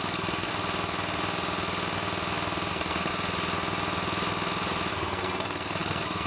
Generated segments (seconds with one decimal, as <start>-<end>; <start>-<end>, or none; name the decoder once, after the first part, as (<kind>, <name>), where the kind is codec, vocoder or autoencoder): 0.0-0.5 (codec, SNAC); 2.7-3.1; 4.9-6.3